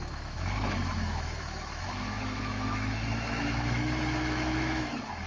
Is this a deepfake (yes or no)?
yes